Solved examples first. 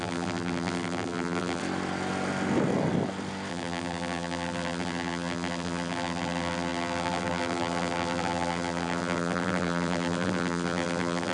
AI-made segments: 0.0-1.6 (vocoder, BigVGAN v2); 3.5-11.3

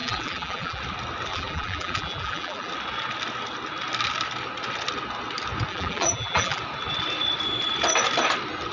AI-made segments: 0.0-0.8 (vocoder, BigVGAN v2); 1.3-2.7; 5.7-6.6

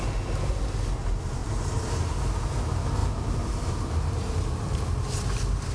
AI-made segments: 1.4-2.1 (vocoder, BigVGAN v2); 3.0-4.8

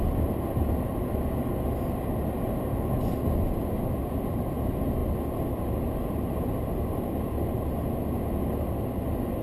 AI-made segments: none

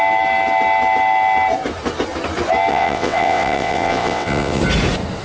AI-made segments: 2.7-4.6 (vocoder, WaveNeXt)

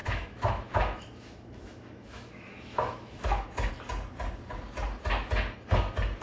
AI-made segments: 0.0-3.7 (autoencoder, DAC-VAE)

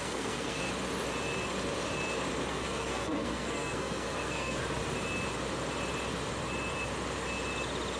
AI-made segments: 0.0-0.6 (codec, SNAC); 2.5-4.6

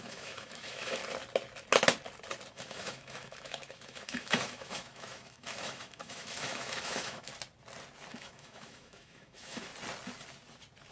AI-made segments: 0.0-1.0 (autoencoder, DAC-VAE); 2.5-7.3; 8.1-9.7